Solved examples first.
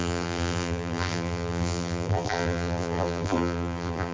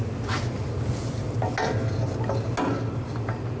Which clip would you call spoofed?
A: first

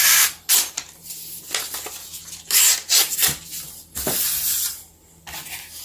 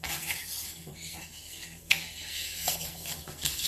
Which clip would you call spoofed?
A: second